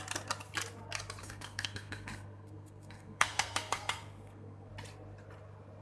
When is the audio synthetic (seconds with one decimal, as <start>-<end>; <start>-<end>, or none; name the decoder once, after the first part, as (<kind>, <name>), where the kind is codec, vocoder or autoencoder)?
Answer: 1.2-4.7 (codec, SNAC)